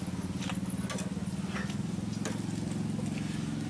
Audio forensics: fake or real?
real